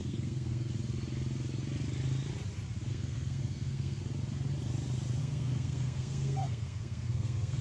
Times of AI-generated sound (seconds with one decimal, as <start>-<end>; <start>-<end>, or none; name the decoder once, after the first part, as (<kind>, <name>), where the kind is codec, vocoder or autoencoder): 0.0-0.7 (codec, SNAC); 2.9-4.0; 5.2-7.6

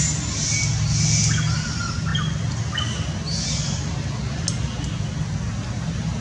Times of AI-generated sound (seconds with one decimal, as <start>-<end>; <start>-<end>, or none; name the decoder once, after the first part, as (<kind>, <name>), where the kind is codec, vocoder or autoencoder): none

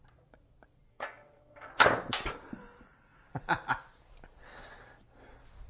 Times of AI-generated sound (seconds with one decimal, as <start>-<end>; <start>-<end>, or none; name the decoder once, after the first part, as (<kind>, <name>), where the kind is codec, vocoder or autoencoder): 0.9-1.7 (codec, SNAC)

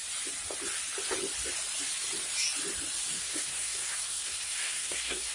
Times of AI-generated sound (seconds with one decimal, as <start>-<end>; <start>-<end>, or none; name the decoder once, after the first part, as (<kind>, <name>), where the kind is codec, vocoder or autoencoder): 3.2-5.3 (codec, SNAC)

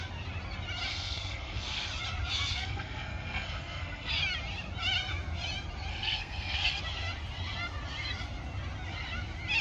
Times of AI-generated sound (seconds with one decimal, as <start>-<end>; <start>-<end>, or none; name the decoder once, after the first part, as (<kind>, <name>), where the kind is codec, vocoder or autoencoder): 0.9-1.9 (codec, SNAC); 2.5-4.1; 5.9-6.8